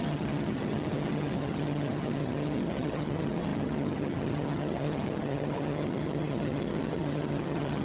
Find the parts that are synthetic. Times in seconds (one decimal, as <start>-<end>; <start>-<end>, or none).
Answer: 0.0-7.8